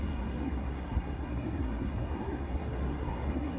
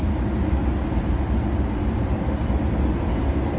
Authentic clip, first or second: second